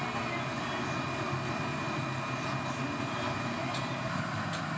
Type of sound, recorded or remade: recorded